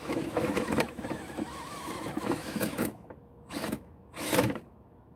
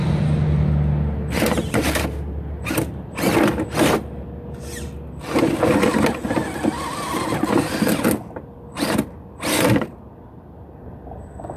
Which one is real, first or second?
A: second